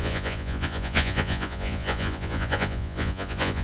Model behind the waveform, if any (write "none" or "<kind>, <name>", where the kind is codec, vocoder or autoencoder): vocoder, Vocos